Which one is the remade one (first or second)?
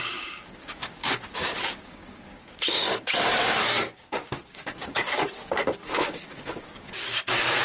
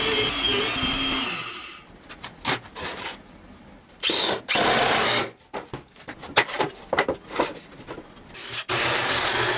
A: first